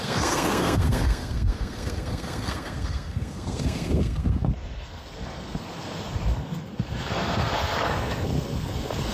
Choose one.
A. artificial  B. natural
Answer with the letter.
A